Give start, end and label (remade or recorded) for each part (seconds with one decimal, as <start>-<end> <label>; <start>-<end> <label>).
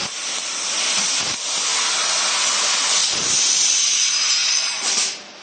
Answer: 0.0-4.4 recorded; 4.4-4.9 remade; 4.9-5.4 recorded